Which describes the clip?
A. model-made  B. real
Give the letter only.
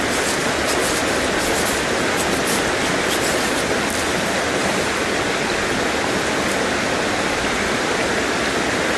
B